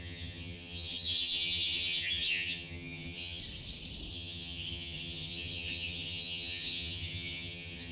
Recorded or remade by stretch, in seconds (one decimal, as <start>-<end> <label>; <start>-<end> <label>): 0.0-3.4 remade; 3.4-4.1 recorded; 4.1-7.9 remade